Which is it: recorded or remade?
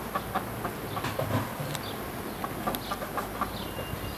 recorded